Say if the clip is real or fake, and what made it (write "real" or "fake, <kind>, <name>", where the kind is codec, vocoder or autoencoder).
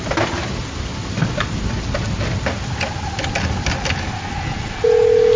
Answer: real